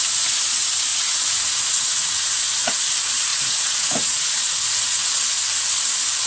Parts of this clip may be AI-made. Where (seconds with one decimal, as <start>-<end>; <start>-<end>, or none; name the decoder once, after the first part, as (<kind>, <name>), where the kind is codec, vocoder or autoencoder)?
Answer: 0.9-2.7 (vocoder, Vocos); 3.3-5.1